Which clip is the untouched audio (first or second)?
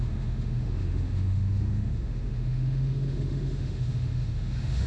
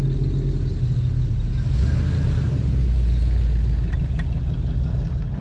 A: second